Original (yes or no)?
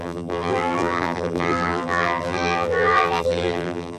no